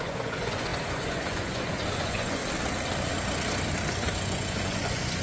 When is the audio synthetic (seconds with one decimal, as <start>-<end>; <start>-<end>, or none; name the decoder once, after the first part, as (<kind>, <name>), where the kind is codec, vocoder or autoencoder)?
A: 0.0-2.4 (vocoder, Vocos); 3.9-5.2